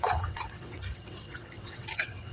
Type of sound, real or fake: fake